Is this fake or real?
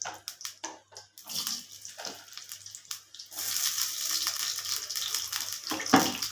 real